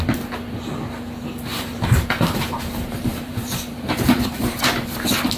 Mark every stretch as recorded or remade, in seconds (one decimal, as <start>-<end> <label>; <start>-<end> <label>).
0.0-1.5 recorded; 1.5-4.7 remade; 4.7-5.4 recorded